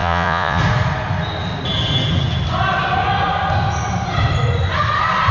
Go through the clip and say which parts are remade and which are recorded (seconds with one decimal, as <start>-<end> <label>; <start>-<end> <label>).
0.0-0.6 remade; 0.6-5.3 recorded

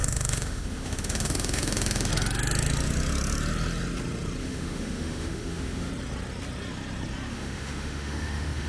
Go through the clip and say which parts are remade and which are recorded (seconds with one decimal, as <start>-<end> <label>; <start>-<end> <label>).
0.0-2.1 remade; 2.1-4.4 recorded; 4.4-5.9 remade; 5.9-7.3 recorded; 7.3-8.7 remade